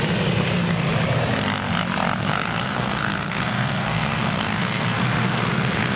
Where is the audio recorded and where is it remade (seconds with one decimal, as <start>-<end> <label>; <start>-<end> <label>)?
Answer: 0.0-2.2 recorded; 2.2-6.0 remade